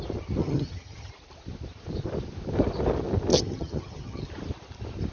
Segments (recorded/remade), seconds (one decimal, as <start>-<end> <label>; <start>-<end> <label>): 0.0-0.4 recorded; 0.4-1.1 remade; 1.1-3.3 recorded; 3.3-4.3 remade; 4.3-5.1 recorded